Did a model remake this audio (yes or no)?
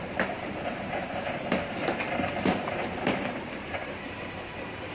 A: yes